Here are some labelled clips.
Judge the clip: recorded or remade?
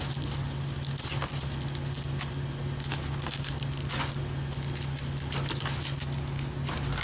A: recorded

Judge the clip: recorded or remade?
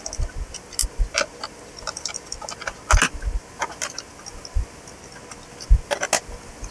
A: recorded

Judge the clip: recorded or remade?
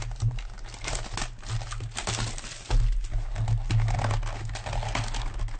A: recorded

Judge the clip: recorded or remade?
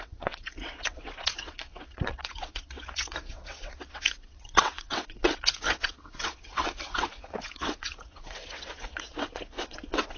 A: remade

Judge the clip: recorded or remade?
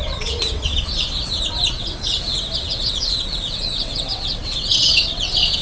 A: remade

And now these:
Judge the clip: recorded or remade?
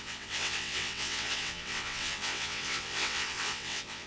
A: remade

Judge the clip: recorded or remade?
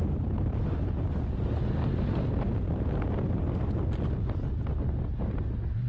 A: recorded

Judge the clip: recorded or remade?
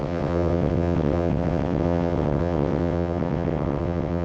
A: remade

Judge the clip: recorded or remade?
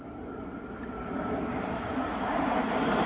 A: recorded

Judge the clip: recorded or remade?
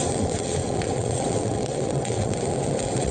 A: remade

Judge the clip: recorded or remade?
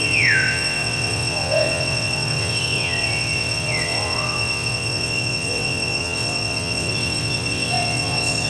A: remade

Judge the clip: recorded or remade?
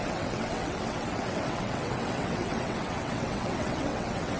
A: remade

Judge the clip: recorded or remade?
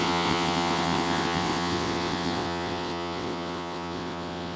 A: remade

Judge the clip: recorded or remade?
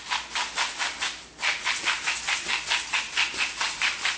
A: recorded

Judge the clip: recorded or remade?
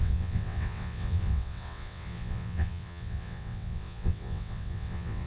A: remade